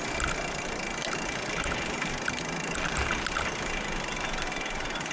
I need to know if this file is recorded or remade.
recorded